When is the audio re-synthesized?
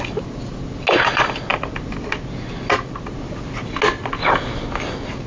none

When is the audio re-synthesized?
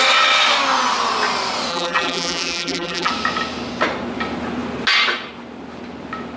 1.7-3.1 (vocoder, BigVGAN v2)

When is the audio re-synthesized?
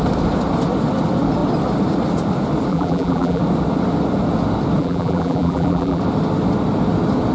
2.7-3.4 (vocoder, BigVGAN v2); 4.8-6.0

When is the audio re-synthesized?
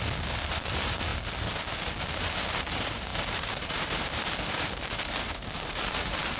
0.0-1.1 (vocoder, BigVGAN v2); 2.0-6.4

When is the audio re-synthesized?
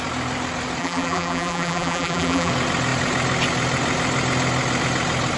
0.8-2.5 (vocoder, BigVGAN v2)